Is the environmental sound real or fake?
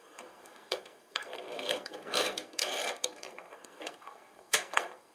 fake